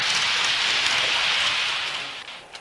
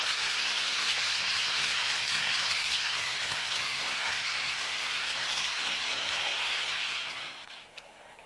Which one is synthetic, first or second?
second